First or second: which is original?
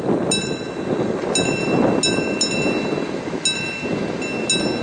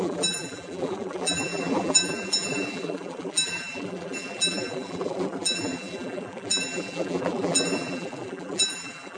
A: first